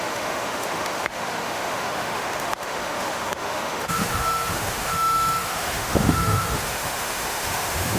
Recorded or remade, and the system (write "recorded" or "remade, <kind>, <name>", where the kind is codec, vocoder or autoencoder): remade, autoencoder, DAC-VAE